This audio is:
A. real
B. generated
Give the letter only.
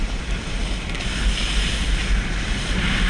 A